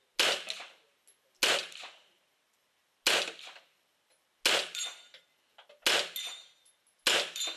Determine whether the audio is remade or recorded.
recorded